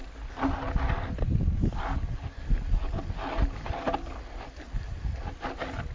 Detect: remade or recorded recorded